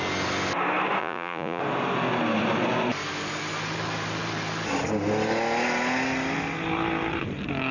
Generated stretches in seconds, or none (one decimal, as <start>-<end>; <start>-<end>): 1.0-1.6